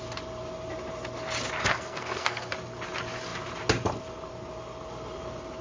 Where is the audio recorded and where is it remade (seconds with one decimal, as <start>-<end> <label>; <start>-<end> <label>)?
0.0-1.7 recorded; 1.7-2.5 remade; 2.5-5.6 recorded